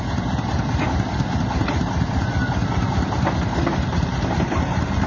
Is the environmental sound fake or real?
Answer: fake